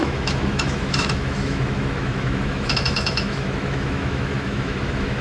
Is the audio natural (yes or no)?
no